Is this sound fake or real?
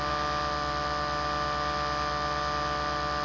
real